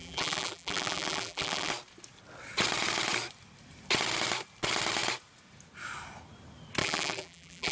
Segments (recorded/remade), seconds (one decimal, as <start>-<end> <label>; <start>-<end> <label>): 0.0-1.7 remade; 1.7-6.8 recorded; 6.8-7.7 remade